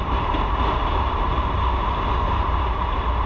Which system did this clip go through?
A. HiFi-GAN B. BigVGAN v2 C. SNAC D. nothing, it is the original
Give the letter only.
B